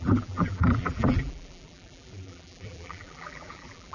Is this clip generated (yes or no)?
yes